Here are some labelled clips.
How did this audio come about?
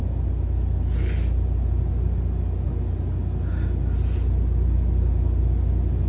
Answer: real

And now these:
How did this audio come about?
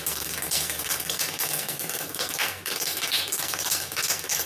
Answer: fake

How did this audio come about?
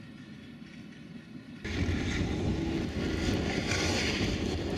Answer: real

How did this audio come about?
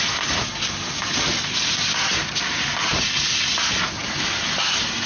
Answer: real